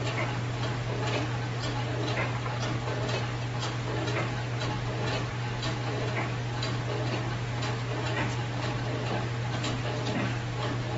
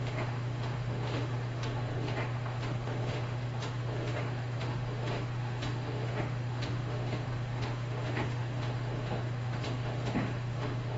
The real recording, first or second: first